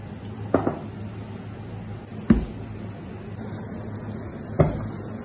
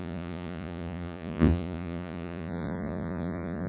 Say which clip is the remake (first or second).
second